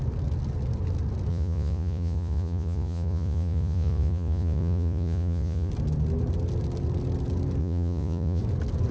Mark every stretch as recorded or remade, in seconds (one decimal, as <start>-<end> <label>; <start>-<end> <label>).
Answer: 0.0-1.3 recorded; 1.3-5.7 remade; 5.7-7.6 recorded; 7.6-8.4 remade; 8.4-8.9 recorded